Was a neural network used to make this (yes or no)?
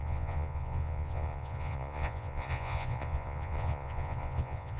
yes